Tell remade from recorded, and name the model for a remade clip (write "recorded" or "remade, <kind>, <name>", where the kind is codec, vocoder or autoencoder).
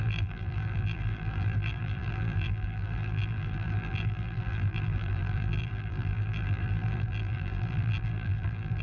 remade, vocoder, BigVGAN v2